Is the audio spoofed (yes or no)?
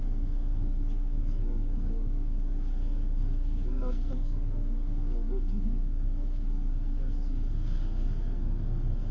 yes